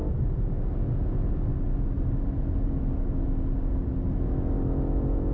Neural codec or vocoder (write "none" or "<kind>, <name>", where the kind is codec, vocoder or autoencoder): none